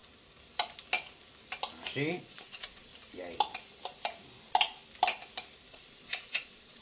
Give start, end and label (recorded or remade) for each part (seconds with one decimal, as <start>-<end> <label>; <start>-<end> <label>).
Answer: 0.0-2.1 recorded; 2.1-2.9 remade; 2.9-5.7 recorded; 5.7-6.8 remade